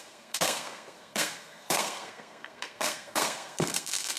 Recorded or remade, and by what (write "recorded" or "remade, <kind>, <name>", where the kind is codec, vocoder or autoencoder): remade, codec, SNAC